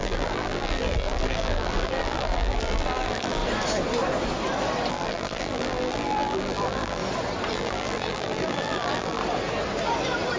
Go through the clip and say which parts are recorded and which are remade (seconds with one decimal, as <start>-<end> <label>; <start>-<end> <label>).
0.0-3.4 remade; 3.4-4.9 recorded; 4.9-7.0 remade; 7.0-7.5 recorded; 7.5-9.2 remade; 9.2-10.4 recorded